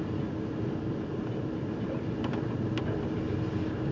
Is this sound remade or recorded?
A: recorded